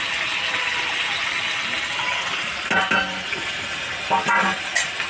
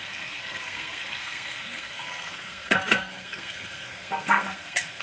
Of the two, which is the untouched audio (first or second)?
first